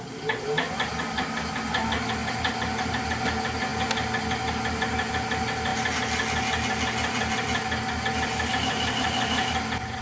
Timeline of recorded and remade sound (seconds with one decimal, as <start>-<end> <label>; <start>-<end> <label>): 0.0-10.0 recorded